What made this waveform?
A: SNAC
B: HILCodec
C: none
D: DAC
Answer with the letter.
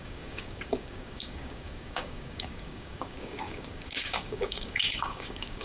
D